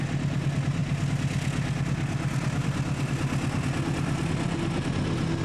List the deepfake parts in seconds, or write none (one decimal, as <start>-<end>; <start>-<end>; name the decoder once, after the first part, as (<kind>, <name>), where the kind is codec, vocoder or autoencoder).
none